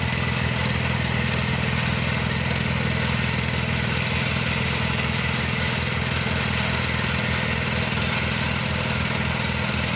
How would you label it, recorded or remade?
recorded